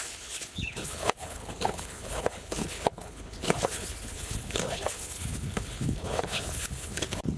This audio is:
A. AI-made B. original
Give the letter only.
A